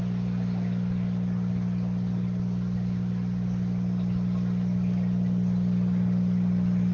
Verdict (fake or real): real